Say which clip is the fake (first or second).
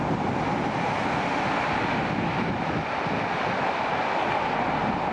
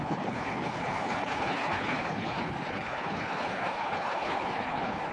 second